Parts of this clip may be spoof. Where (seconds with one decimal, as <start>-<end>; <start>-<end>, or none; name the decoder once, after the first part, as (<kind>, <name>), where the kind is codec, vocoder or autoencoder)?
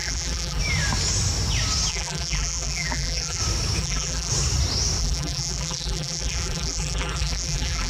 0.0-0.6 (vocoder, BigVGAN v2); 1.9-3.4; 3.8-4.3; 5.0-7.9